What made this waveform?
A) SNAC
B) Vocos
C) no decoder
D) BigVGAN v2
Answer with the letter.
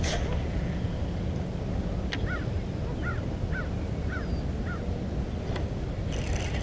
C